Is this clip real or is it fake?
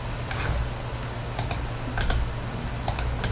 real